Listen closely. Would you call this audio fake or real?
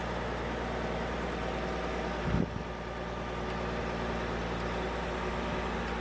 real